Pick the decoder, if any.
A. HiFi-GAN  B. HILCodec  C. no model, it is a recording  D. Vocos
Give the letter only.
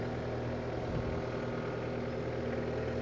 C